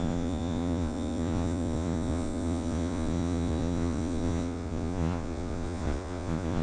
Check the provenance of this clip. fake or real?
fake